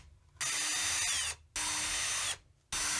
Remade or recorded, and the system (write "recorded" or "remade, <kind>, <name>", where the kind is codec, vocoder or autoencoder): recorded